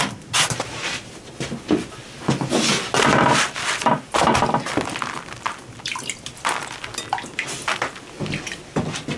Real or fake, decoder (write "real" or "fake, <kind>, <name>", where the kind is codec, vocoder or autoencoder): real